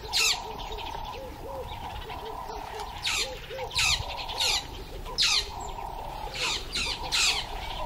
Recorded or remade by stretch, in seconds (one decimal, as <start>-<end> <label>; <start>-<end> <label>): 0.0-3.2 remade; 3.2-4.0 recorded; 4.0-7.9 remade

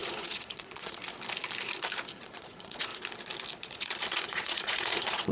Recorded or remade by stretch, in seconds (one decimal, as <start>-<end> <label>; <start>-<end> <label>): 0.0-1.0 remade; 1.0-2.2 recorded; 2.2-2.9 remade; 2.9-3.6 recorded; 3.6-5.3 remade

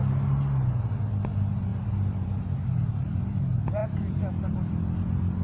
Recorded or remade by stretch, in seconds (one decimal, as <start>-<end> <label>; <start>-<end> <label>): 0.0-1.7 recorded; 1.7-2.6 remade; 2.6-3.8 recorded; 3.8-4.7 remade; 4.7-5.4 recorded

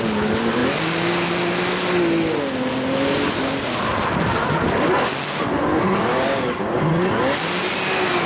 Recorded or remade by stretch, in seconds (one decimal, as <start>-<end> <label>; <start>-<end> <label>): 0.0-8.3 recorded

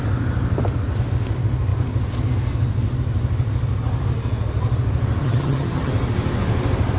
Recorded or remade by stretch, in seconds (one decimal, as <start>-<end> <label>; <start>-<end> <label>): 0.0-5.2 recorded; 5.2-5.9 remade; 5.9-7.0 recorded

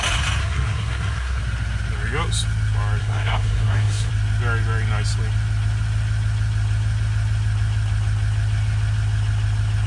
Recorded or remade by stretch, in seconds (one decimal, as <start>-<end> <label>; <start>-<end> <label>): 0.0-0.4 recorded; 0.4-1.4 remade; 1.4-3.0 recorded; 3.0-4.1 remade; 4.1-9.9 recorded